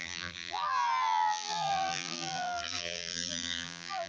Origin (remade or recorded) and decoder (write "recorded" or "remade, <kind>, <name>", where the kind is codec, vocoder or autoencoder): remade, vocoder, BigVGAN v2